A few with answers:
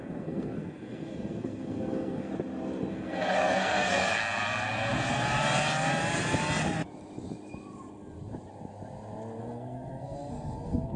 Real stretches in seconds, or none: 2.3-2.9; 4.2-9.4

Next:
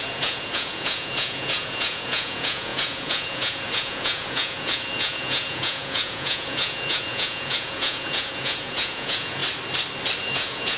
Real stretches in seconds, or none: 9.4-10.2

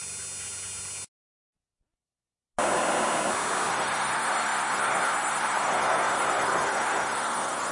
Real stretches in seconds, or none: 0.0-3.7

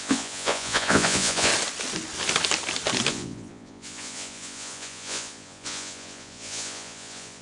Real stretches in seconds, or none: 1.5-3.1

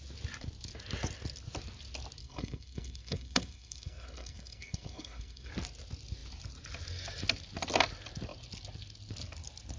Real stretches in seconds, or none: 0.0-2.2; 5.5-9.8